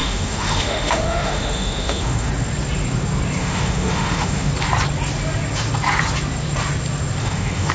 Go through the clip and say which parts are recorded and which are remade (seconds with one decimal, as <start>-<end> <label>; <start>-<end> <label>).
0.0-2.3 remade; 2.3-3.4 recorded; 3.4-4.5 remade; 4.5-7.2 recorded; 7.2-7.7 remade